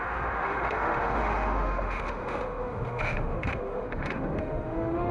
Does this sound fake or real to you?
fake